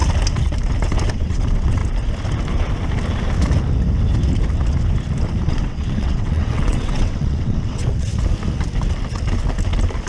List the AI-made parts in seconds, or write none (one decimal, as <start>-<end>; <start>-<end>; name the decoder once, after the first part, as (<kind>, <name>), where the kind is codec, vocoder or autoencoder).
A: 1.1-1.8 (vocoder, WaveNeXt); 5.4-8.1